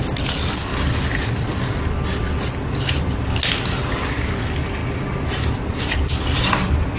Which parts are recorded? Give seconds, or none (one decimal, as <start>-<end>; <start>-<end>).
0.0-7.0